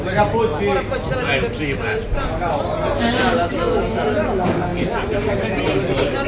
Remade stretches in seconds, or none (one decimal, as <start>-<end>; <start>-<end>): none